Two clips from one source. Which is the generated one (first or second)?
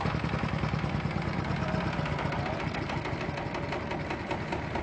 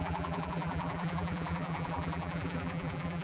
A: second